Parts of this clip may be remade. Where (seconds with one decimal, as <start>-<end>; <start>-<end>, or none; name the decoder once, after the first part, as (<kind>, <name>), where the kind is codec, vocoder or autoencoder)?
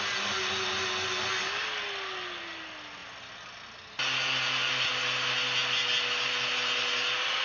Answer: none